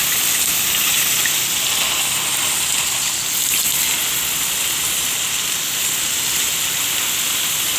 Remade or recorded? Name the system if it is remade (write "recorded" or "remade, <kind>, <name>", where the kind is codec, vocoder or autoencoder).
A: recorded